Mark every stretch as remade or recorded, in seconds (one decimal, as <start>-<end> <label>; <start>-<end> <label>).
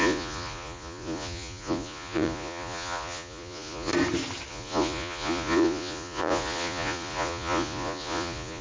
0.0-3.9 remade; 3.9-4.5 recorded; 4.5-8.6 remade